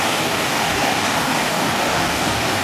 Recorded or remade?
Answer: remade